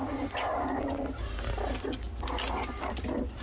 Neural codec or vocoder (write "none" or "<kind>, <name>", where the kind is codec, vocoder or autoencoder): none